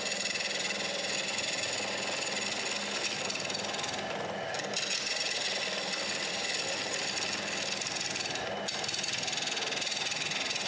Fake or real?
real